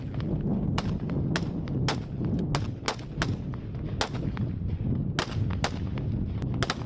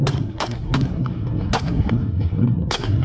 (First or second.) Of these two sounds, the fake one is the second